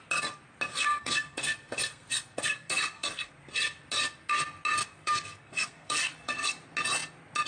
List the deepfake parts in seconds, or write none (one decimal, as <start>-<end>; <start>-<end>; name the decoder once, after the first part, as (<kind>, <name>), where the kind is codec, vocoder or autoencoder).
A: 0.7-3.3 (codec, SNAC); 4.8-6.5